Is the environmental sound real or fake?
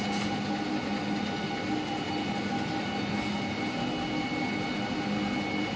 real